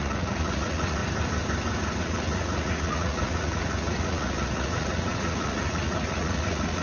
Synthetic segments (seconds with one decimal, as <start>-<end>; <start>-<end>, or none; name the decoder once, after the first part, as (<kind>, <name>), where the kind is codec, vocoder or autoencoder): 0.0-1.0 (vocoder, Vocos); 2.0-6.8